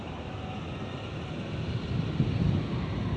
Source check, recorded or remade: recorded